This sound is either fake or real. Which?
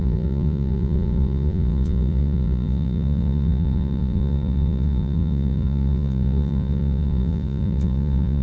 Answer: fake